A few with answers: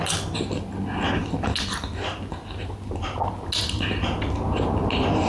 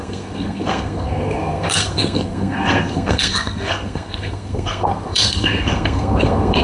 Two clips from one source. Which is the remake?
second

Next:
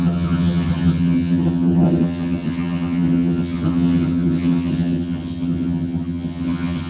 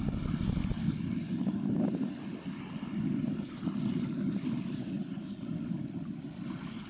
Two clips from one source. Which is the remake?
first